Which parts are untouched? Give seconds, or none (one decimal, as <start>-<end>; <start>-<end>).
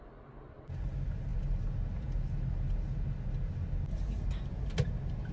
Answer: 0.0-5.3